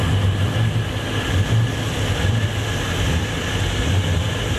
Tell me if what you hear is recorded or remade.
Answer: recorded